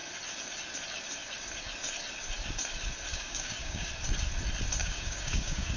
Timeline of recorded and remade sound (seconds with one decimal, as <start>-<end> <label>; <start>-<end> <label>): 0.0-3.1 recorded; 3.1-3.9 remade; 3.9-4.8 recorded; 4.8-5.8 remade

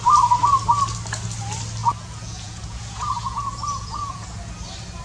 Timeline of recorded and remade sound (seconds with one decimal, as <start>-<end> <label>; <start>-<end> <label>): 0.0-1.8 recorded; 1.8-4.4 remade; 4.4-5.0 recorded

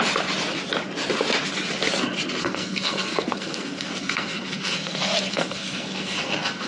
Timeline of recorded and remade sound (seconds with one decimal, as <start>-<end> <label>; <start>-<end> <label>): 0.0-2.4 recorded; 2.4-6.7 remade

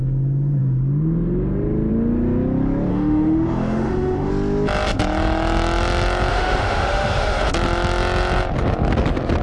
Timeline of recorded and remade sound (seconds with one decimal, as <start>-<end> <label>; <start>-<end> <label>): 0.0-2.9 recorded; 2.9-4.3 remade; 4.3-6.3 recorded; 6.3-7.5 remade; 7.5-9.4 recorded